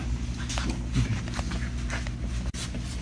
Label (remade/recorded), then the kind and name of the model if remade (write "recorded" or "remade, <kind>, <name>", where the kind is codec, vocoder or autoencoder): recorded